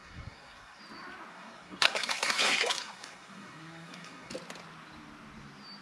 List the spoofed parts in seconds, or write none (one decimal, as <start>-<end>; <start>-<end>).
0.0-0.8; 1.3-4.3